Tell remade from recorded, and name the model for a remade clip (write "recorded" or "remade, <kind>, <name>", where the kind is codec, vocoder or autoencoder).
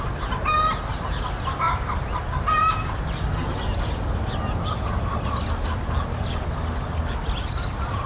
recorded